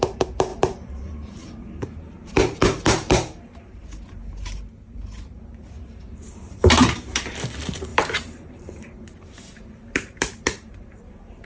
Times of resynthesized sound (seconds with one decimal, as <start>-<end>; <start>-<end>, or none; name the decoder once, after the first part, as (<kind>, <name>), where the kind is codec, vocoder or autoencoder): 0.0-11.5 (vocoder, BigVGAN v2)